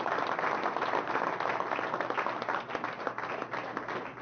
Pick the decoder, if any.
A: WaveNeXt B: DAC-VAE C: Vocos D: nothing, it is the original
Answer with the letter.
D